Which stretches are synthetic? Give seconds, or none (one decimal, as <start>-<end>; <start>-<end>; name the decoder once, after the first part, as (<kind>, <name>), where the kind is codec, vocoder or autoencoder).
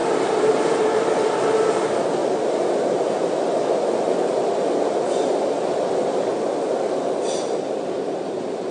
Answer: none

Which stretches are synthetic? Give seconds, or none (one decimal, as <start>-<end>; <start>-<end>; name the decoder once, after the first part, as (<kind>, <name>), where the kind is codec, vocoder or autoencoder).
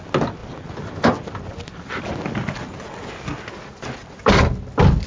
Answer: none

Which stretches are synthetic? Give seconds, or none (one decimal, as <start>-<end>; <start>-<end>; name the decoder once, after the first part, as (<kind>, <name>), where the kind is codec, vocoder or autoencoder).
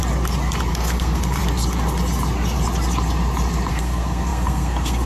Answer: 0.7-1.4 (codec, SNAC); 3.7-5.1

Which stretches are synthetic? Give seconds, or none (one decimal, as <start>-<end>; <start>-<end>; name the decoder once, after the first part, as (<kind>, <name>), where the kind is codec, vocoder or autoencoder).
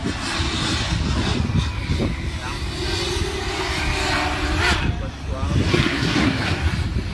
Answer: 5.7-6.6 (codec, SNAC)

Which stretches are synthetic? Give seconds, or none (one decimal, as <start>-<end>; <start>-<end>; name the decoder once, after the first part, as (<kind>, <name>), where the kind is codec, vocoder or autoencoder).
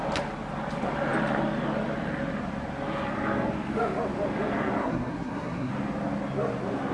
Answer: 4.8-5.7 (codec, SNAC)